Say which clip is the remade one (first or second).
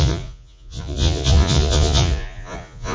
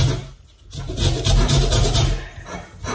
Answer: first